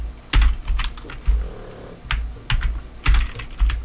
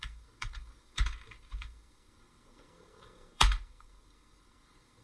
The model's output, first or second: second